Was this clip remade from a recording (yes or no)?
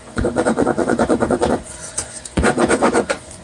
yes